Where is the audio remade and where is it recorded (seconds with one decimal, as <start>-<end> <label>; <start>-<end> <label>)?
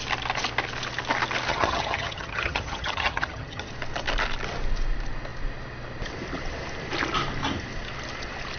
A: 0.0-1.5 recorded; 1.5-3.7 remade; 3.7-8.6 recorded